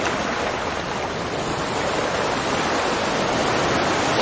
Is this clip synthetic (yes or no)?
no